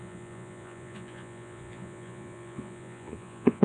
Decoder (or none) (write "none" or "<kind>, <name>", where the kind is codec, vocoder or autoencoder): vocoder, Vocos